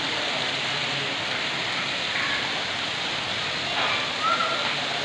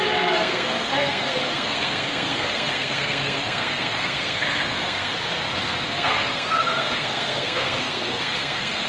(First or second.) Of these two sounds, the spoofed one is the second